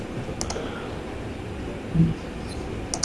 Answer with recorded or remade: recorded